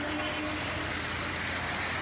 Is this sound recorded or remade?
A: recorded